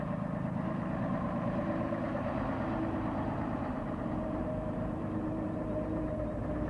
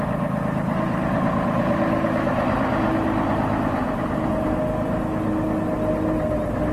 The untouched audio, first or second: second